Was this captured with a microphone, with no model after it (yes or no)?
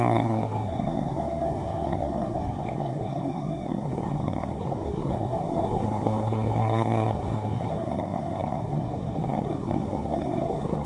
no